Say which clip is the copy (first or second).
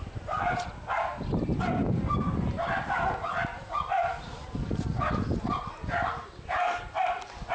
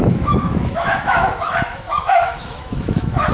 second